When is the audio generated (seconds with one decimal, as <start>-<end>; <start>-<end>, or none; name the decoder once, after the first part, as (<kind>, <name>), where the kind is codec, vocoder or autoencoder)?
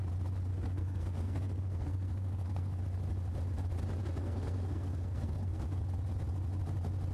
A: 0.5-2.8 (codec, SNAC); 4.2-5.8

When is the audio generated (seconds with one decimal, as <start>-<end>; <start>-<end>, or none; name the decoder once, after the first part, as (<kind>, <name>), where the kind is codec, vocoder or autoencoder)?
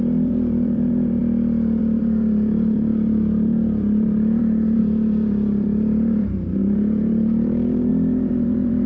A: 0.0-1.2 (vocoder, BigVGAN v2); 1.8-8.9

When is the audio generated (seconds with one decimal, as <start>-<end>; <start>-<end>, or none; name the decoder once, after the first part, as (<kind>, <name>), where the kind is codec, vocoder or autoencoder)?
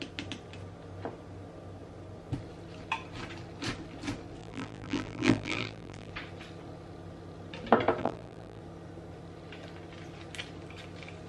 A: 4.4-6.1 (vocoder, BigVGAN v2); 8.0-8.6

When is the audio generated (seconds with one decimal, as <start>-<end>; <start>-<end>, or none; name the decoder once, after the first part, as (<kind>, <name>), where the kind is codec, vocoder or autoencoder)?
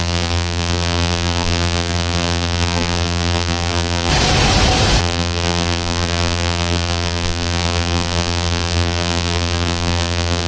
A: 0.0-4.1 (vocoder, BigVGAN v2); 5.0-10.5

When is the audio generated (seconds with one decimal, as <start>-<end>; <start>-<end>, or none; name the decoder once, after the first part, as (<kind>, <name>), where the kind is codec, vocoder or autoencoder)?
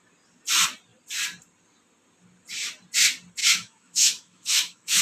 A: 3.4-5.0 (autoencoder, DAC-VAE)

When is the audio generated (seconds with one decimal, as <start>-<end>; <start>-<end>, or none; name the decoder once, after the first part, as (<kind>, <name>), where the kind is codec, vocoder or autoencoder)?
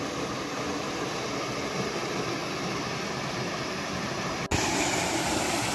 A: none